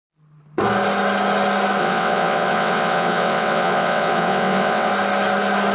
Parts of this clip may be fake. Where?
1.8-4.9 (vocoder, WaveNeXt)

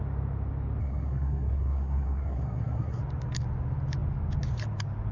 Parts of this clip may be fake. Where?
0.8-3.0 (codec, SNAC)

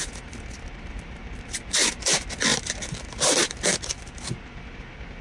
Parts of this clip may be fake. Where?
none